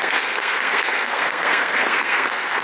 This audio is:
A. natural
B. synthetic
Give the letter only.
B